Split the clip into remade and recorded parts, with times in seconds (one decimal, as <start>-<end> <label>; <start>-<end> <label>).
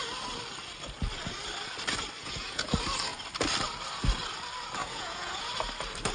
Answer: 0.0-2.2 recorded; 2.2-2.7 remade; 2.7-4.8 recorded; 4.8-5.5 remade; 5.5-6.1 recorded